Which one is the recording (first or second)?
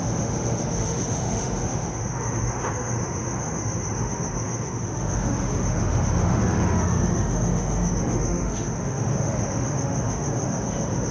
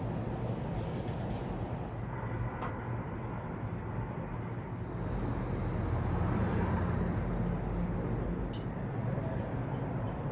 second